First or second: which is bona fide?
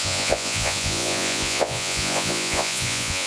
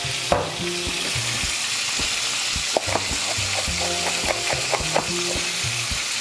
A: second